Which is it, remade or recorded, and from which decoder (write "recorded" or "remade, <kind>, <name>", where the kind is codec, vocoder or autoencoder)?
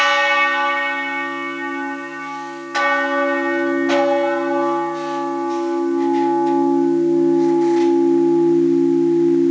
recorded